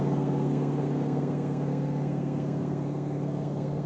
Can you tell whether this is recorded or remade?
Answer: remade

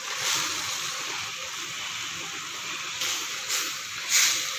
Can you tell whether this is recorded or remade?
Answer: recorded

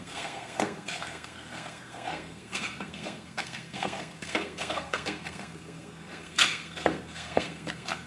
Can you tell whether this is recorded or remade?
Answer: remade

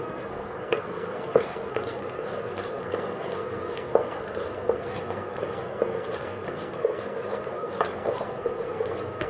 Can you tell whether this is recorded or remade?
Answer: remade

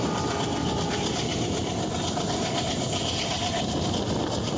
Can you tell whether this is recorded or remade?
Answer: recorded